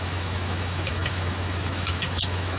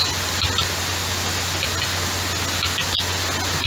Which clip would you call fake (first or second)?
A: first